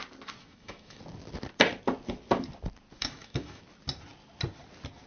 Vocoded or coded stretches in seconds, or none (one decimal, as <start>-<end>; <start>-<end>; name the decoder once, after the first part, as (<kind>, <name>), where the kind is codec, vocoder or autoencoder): 0.4-1.0 (autoencoder, DAC-VAE); 3.0-3.6